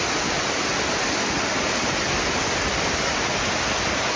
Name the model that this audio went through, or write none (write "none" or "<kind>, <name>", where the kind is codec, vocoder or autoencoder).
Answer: none